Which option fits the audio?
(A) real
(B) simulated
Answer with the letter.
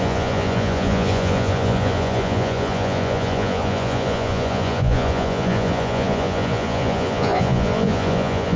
B